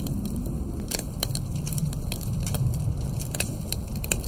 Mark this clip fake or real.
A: real